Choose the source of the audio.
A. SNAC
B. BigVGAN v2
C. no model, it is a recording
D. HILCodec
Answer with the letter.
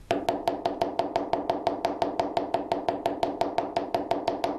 C